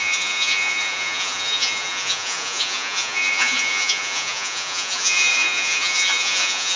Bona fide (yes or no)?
no